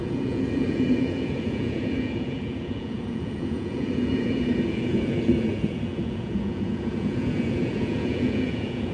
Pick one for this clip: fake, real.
fake